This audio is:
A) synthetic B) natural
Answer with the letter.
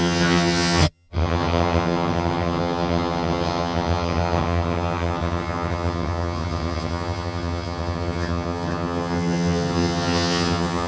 A